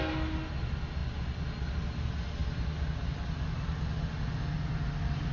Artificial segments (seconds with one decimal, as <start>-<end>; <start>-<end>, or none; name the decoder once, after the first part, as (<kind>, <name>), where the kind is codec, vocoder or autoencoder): none